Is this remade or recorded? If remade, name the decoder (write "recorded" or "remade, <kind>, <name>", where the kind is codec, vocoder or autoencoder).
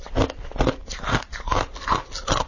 recorded